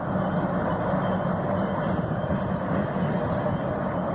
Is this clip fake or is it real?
real